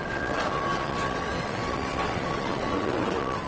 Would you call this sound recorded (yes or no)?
no